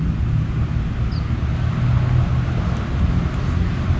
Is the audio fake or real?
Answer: real